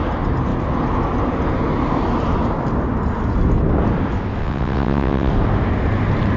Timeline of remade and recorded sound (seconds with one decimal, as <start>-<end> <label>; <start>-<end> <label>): 0.0-4.4 recorded; 4.4-5.3 remade; 5.3-6.4 recorded